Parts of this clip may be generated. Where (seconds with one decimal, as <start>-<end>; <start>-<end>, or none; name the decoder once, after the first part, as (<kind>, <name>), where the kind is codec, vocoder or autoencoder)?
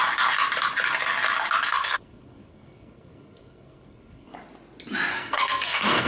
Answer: 1.7-4.3 (codec, SNAC); 5.1-6.1